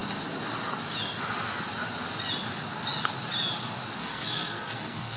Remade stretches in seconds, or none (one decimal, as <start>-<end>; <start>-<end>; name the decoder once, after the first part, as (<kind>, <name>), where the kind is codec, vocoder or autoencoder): 4.0-5.2 (codec, SNAC)